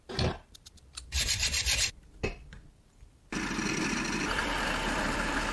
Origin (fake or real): fake